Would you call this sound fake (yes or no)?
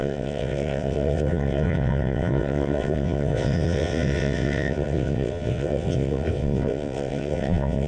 yes